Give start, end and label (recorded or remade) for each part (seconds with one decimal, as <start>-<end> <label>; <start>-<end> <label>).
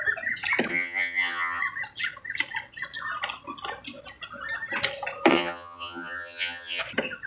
0.0-0.7 recorded; 0.7-1.6 remade; 1.6-5.3 recorded; 5.3-6.8 remade; 6.8-7.3 recorded